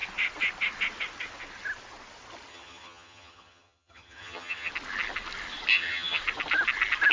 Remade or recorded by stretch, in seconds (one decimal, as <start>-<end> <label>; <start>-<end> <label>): 0.0-2.5 recorded; 2.5-4.7 remade; 4.7-5.7 recorded; 5.7-6.2 remade; 6.2-7.1 recorded